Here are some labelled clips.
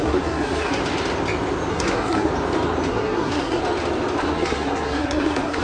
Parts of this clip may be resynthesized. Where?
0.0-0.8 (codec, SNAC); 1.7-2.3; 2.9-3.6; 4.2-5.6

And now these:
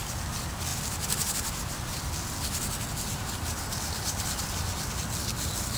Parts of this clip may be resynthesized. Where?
none

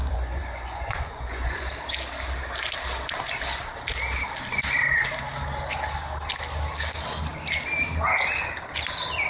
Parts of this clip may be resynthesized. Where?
0.0-1.7 (vocoder, Vocos)

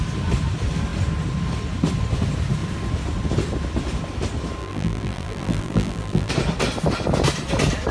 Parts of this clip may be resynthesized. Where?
4.6-6.3 (vocoder, BigVGAN v2)